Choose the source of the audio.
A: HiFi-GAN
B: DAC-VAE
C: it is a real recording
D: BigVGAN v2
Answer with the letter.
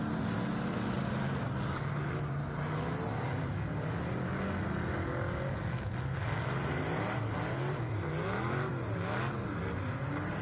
C